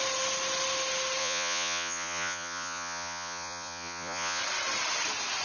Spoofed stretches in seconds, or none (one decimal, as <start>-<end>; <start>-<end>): 1.2-4.4